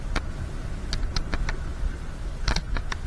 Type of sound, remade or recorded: recorded